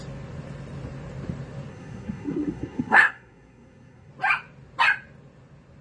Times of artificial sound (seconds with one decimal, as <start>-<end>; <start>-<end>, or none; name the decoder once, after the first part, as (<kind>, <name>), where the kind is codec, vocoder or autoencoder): 1.7-4.1 (codec, SNAC)